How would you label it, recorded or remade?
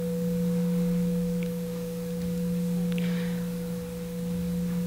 remade